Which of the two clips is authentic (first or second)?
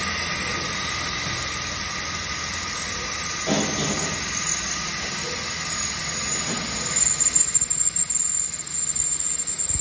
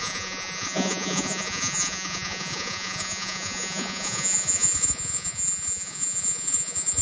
first